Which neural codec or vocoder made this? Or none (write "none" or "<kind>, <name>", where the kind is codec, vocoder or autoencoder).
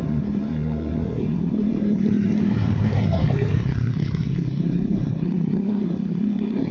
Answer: codec, SNAC